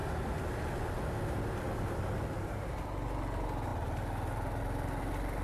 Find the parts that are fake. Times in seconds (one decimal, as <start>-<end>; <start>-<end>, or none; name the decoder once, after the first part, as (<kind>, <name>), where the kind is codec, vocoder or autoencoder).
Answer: none